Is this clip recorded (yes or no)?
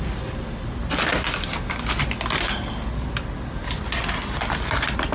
yes